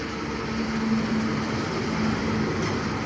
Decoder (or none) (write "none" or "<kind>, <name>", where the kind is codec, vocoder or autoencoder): none